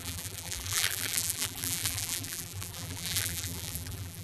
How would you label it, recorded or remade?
remade